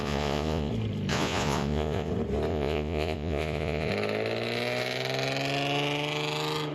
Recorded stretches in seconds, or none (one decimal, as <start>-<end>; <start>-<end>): 0.7-1.1; 2.1-2.5; 3.9-6.7